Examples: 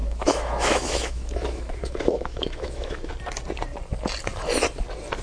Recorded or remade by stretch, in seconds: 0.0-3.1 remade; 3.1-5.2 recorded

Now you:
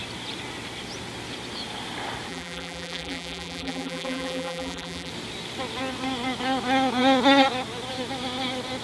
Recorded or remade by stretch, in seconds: 0.0-2.3 recorded; 2.3-5.1 remade; 5.1-8.8 recorded

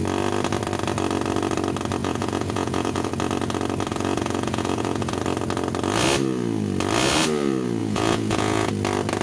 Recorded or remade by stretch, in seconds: 0.0-2.0 recorded; 2.0-3.1 remade; 3.1-3.9 recorded; 3.9-5.2 remade; 5.2-7.8 recorded; 7.8-8.7 remade; 8.7-9.2 recorded

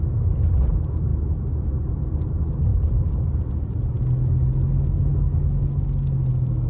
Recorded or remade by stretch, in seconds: 0.0-2.7 recorded; 2.7-4.0 remade; 4.0-6.7 recorded

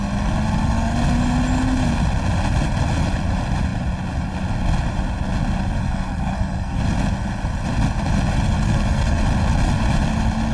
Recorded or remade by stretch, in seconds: 0.0-5.8 recorded; 5.8-6.8 remade; 6.8-8.5 recorded; 8.5-9.2 remade; 9.2-10.5 recorded

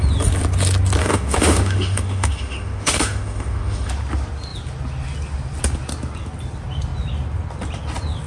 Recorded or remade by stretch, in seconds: 0.0-1.0 recorded; 1.0-3.9 remade; 3.9-8.3 recorded

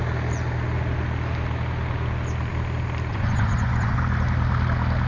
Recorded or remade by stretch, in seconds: 0.0-3.1 recorded; 3.1-4.0 remade; 4.0-5.1 recorded